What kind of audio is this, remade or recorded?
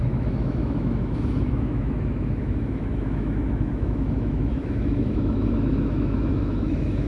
remade